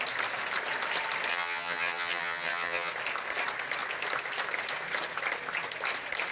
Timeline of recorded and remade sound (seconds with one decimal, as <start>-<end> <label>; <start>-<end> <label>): 0.0-1.3 recorded; 1.3-2.9 remade; 2.9-6.3 recorded